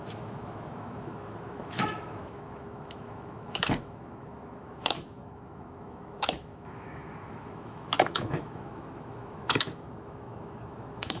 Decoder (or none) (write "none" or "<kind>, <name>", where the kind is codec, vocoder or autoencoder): autoencoder, DAC-VAE